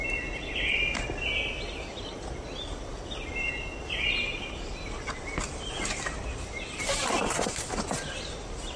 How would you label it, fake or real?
real